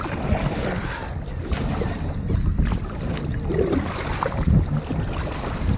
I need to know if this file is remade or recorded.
recorded